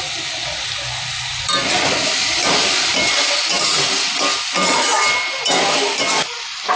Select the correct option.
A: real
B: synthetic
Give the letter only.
A